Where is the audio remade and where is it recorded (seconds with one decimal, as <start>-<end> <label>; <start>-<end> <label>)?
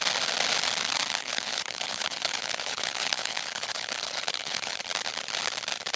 0.0-1.2 recorded; 1.2-4.8 remade; 4.8-6.0 recorded